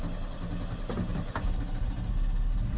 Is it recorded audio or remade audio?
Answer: recorded